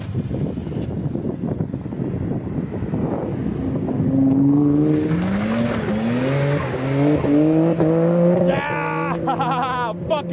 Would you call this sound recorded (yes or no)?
yes